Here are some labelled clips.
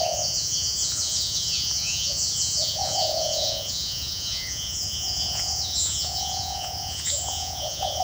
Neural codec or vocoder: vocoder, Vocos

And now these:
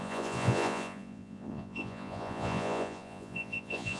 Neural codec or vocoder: vocoder, Vocos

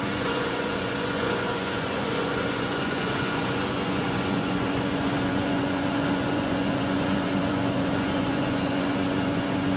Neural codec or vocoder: vocoder, Vocos